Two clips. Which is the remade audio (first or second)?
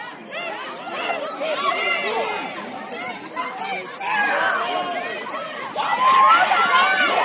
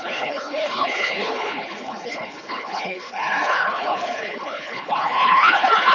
second